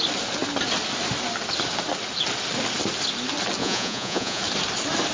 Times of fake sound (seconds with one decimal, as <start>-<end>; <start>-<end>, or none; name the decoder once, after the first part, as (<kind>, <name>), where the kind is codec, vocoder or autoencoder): 3.6-4.4 (vocoder, Vocos)